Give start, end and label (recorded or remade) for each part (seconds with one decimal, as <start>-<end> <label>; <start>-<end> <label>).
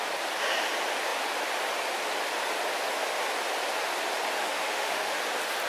0.0-4.4 recorded; 4.4-5.2 remade; 5.2-5.7 recorded